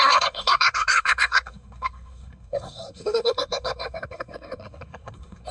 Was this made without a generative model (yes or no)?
no